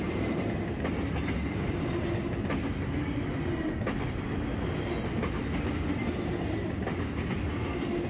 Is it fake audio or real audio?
real